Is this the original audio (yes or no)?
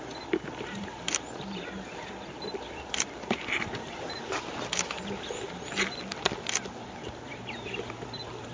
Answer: no